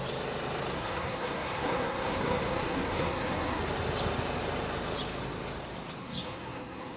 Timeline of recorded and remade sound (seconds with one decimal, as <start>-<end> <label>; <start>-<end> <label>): 0.0-0.7 recorded; 0.7-3.6 remade; 3.6-6.0 recorded; 6.0-7.0 remade